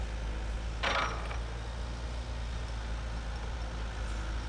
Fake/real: real